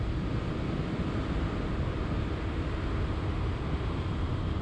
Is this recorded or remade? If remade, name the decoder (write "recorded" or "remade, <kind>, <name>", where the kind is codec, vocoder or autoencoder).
remade, vocoder, BigVGAN v2